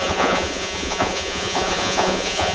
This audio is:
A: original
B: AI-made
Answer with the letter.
B